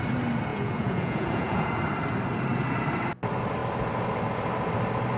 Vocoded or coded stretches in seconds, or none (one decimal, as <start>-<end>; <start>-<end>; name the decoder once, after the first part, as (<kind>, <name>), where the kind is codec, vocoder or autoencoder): 0.5-1.7 (vocoder, Vocos)